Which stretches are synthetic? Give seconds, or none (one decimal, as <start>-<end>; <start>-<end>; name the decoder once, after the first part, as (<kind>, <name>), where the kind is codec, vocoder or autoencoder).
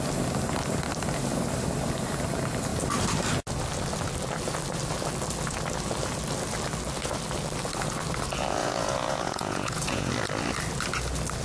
8.6-10.1 (vocoder, Vocos)